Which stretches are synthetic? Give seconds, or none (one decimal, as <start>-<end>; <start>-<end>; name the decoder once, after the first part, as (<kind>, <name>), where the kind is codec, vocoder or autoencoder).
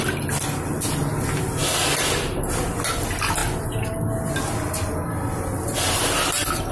none